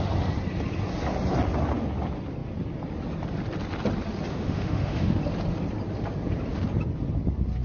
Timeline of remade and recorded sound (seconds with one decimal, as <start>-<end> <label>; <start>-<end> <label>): 0.0-4.3 recorded; 4.3-5.2 remade; 5.2-7.6 recorded